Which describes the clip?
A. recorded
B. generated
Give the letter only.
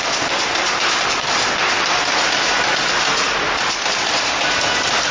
A